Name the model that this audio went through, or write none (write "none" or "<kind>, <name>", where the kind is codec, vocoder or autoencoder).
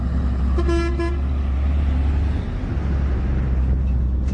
none